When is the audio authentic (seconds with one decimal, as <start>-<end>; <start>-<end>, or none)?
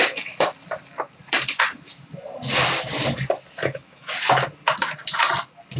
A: 0.0-3.6; 4.1-5.8